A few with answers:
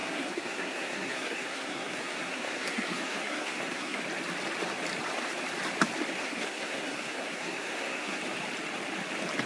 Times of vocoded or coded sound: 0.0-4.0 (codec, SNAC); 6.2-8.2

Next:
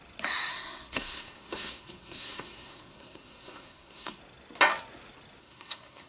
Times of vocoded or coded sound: 0.5-4.2 (codec, SNAC); 5.4-6.1